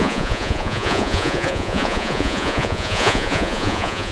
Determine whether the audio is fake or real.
fake